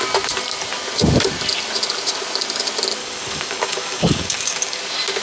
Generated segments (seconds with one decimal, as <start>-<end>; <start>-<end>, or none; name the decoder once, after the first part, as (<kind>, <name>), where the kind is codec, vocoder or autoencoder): 3.0-4.8 (codec, DAC)